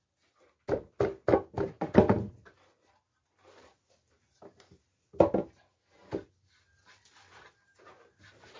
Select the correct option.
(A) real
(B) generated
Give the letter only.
A